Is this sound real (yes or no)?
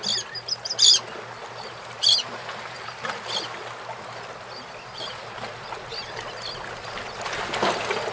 yes